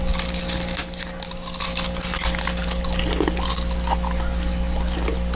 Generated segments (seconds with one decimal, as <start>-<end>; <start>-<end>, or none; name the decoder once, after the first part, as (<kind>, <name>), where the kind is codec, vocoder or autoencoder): none